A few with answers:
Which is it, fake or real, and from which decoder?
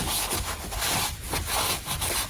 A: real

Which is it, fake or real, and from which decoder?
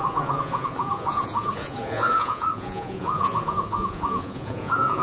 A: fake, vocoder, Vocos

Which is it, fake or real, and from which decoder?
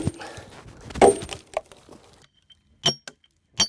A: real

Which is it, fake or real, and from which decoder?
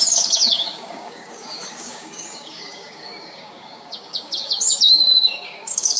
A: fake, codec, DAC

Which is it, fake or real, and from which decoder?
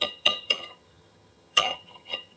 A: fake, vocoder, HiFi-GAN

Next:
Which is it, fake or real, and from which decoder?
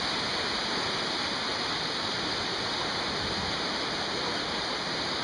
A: real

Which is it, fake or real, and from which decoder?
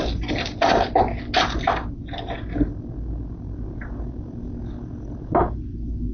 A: real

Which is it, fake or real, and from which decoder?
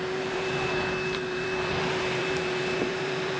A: fake, vocoder, BigVGAN v2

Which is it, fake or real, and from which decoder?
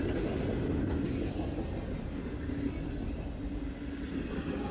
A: real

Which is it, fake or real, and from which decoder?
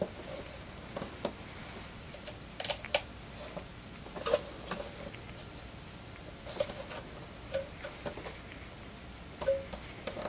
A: real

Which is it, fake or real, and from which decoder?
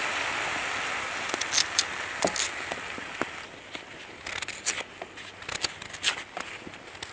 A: real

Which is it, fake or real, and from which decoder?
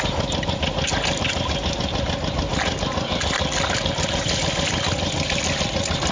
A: real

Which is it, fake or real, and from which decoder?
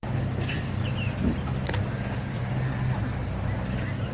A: real